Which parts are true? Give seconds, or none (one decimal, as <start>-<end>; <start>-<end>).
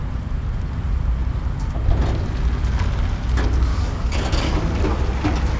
0.0-3.7; 4.5-5.6